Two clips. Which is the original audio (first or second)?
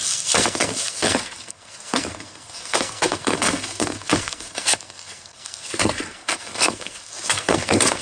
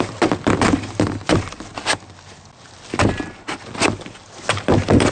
second